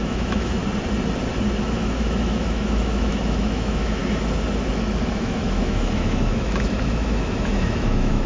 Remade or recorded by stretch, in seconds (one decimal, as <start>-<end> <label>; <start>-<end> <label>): 0.0-0.6 remade; 0.6-1.6 recorded; 1.6-4.0 remade; 4.0-5.1 recorded; 5.1-8.3 remade